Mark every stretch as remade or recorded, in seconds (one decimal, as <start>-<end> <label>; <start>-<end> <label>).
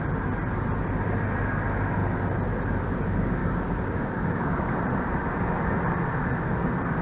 0.0-3.4 recorded; 3.4-4.8 remade; 4.8-7.0 recorded